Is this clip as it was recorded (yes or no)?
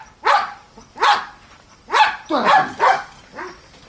yes